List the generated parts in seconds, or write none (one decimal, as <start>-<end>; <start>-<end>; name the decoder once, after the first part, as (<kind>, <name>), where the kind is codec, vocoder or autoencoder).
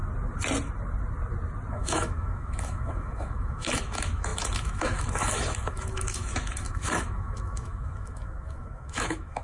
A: 1.7-9.4 (autoencoder, DAC-VAE)